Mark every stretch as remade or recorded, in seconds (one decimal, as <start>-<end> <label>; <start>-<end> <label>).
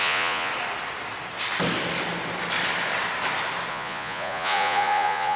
0.0-0.5 remade; 0.5-3.7 recorded; 3.7-5.4 remade